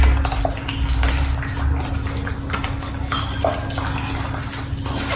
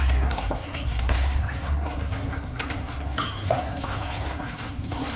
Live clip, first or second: first